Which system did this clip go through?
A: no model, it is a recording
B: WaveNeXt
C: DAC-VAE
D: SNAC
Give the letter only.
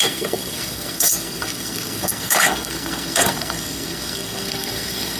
D